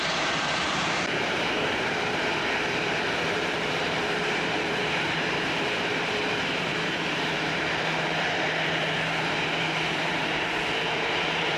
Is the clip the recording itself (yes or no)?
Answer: no